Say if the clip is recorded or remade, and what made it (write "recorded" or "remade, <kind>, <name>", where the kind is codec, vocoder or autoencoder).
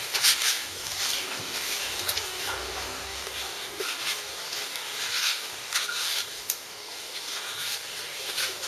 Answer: remade, codec, DAC